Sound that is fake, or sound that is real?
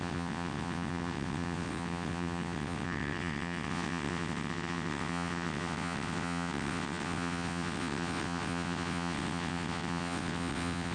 fake